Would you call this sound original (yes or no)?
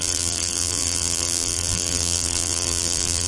no